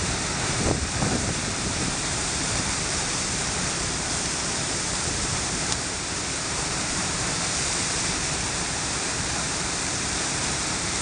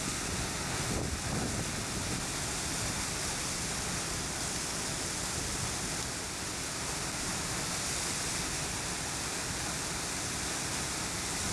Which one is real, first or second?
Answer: second